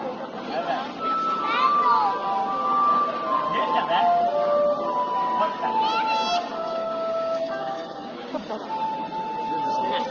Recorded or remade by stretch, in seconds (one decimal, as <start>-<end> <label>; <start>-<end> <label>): 0.0-6.6 recorded; 6.6-8.5 remade; 8.5-10.1 recorded